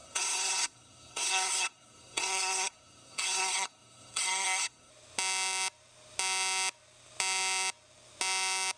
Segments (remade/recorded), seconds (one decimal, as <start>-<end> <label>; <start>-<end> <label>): 0.0-4.9 remade; 4.9-8.8 recorded